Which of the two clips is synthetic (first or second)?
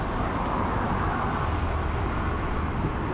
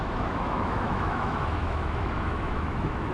second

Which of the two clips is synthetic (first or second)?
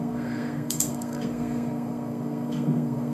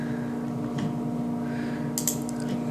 first